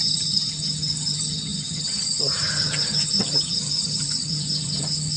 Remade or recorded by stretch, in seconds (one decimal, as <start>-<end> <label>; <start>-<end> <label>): 0.0-5.2 remade

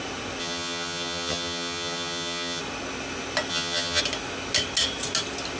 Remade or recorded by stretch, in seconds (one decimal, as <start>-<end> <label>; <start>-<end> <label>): 0.0-0.4 recorded; 0.4-2.6 remade; 2.6-3.5 recorded; 3.5-4.0 remade; 4.0-5.6 recorded

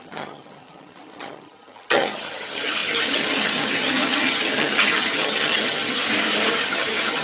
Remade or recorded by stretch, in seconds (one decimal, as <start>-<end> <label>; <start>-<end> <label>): 0.0-6.0 remade; 6.0-6.5 recorded; 6.5-7.2 remade

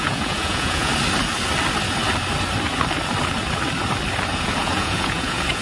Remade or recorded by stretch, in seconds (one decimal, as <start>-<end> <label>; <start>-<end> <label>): 0.0-0.9 remade; 0.9-4.3 recorded; 4.3-5.6 remade

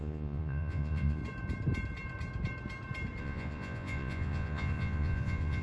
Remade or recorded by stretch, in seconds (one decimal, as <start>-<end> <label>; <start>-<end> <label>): 0.0-1.2 remade; 1.2-3.2 recorded; 3.2-5.6 remade

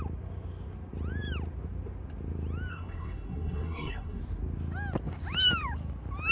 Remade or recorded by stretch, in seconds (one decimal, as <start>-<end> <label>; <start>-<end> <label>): 0.0-2.7 recorded; 2.7-4.2 remade; 4.2-6.3 recorded

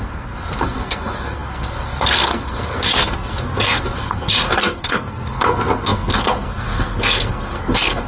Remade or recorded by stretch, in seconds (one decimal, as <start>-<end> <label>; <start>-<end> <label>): 0.0-8.1 remade